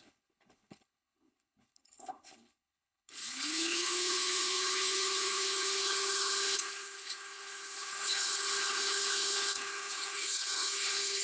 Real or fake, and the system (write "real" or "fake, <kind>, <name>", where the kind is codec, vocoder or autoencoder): fake, codec, HILCodec